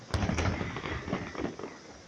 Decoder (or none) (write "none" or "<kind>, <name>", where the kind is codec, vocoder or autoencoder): none